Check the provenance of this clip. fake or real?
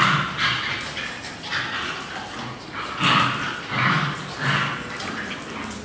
real